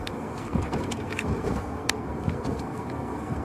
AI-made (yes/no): yes